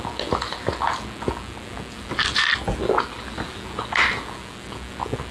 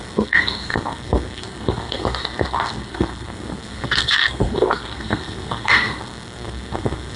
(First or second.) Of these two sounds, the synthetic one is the second